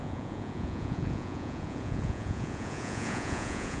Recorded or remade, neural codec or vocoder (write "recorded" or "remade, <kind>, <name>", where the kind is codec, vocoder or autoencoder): remade, vocoder, Vocos